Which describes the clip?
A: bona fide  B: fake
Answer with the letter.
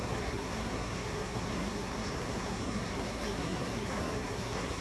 B